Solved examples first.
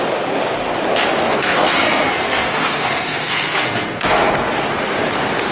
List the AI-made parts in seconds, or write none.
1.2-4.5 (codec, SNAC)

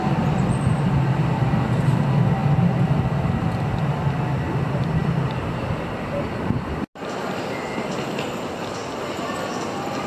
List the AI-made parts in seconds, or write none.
none

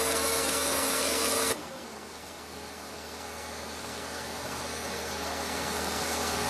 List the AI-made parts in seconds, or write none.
0.0-6.5 (codec, SNAC)

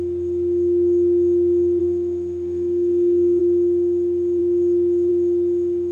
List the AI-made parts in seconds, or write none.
1.8-3.4 (codec, SNAC)

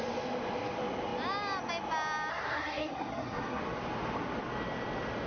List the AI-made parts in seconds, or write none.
2.3-3.6 (codec, SNAC)